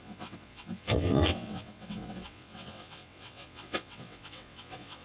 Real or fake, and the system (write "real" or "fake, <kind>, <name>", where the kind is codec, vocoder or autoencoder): fake, vocoder, WaveNeXt